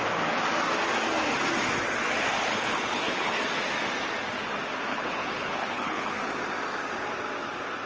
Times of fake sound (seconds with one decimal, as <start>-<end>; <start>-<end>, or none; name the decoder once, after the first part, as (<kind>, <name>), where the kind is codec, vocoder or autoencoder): 2.4-3.4 (codec, HILCodec); 4.9-6.2